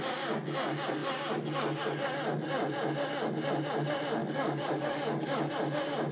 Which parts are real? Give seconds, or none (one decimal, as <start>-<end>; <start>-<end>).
0.0-4.2; 5.5-6.1